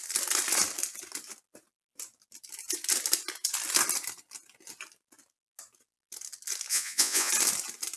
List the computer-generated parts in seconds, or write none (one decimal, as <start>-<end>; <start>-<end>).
6.7-7.3